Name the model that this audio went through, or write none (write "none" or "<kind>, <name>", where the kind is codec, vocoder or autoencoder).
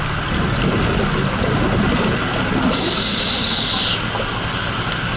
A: none